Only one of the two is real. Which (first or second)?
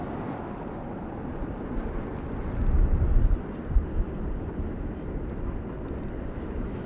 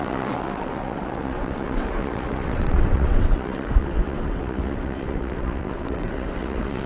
first